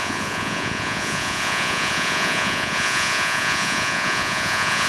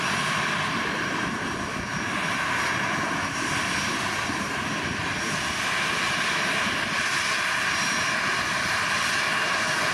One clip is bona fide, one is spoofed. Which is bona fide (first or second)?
second